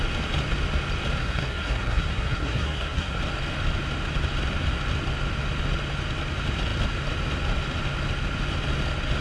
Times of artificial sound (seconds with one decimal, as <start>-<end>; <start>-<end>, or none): 1.2-3.2

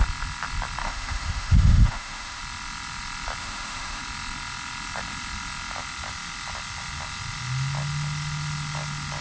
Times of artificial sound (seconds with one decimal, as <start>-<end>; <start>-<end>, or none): 0.8-2.4; 3.4-4.0